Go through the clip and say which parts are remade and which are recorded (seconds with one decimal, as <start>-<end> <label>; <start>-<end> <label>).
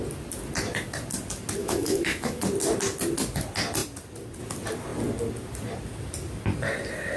0.0-1.6 recorded; 1.6-2.4 remade; 2.4-7.2 recorded